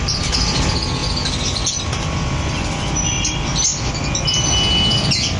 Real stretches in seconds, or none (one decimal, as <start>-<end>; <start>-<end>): 0.0-5.4